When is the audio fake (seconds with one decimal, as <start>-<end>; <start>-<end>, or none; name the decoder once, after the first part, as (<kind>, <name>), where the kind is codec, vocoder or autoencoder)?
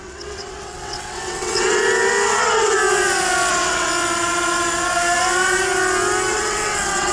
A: 0.0-1.8 (vocoder, WaveNeXt); 2.4-2.8; 3.5-3.9; 6.3-7.1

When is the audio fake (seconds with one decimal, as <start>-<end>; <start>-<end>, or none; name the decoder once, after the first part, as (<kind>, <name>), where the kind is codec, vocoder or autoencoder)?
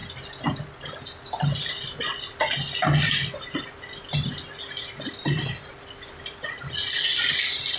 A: none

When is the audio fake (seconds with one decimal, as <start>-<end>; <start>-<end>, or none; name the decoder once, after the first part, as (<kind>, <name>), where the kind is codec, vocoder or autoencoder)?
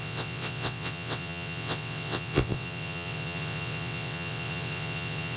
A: 0.0-5.4 (vocoder, WaveNeXt)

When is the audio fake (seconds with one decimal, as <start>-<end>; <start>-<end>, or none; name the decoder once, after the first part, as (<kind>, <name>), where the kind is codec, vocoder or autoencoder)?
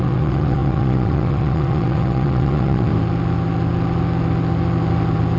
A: 0.0-2.9 (vocoder, WaveNeXt)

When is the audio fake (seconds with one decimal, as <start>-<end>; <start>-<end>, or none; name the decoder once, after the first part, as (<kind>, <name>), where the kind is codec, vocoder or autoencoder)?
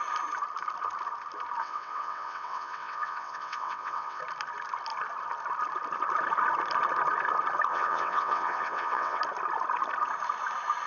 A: 1.6-4.2 (vocoder, WaveNeXt); 7.7-9.2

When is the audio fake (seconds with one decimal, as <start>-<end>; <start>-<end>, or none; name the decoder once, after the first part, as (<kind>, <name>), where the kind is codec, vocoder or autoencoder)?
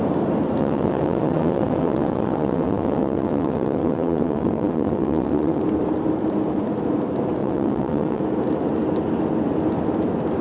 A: 0.6-5.6 (vocoder, WaveNeXt); 7.4-8.2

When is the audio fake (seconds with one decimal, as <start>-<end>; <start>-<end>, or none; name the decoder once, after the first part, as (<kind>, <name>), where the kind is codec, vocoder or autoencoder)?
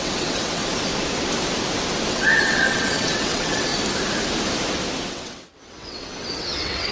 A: 0.0-0.6 (vocoder, WaveNeXt); 2.1-3.7; 5.1-6.9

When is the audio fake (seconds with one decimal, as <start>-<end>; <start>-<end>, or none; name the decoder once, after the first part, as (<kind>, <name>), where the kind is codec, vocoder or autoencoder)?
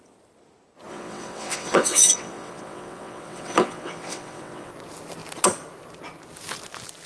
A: 0.9-4.7 (vocoder, WaveNeXt)